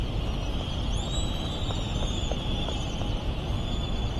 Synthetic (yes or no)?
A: no